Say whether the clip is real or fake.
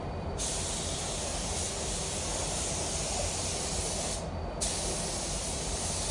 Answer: real